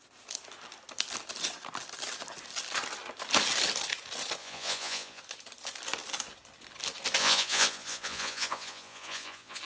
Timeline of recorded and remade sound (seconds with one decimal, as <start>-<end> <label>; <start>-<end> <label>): 0.0-4.4 recorded; 4.4-5.2 remade; 5.2-7.2 recorded; 7.2-9.6 remade